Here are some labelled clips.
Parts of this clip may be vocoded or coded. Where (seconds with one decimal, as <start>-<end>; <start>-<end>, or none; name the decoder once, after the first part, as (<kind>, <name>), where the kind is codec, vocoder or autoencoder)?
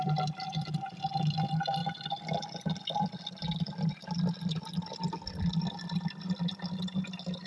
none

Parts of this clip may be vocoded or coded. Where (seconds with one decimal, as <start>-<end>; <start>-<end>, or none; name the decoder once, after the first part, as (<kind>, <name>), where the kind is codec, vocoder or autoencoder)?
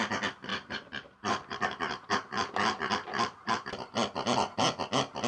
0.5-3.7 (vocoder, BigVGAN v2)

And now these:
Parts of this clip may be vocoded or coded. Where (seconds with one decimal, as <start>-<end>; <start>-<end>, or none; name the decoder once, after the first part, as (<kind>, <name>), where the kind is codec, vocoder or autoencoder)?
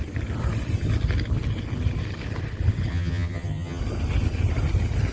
2.9-3.8 (vocoder, HiFi-GAN)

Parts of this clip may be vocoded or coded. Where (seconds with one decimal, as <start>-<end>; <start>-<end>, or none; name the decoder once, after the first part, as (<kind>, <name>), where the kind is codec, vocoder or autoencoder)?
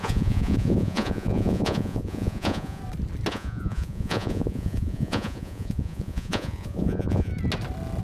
0.0-2.8 (vocoder, Vocos); 3.3-7.3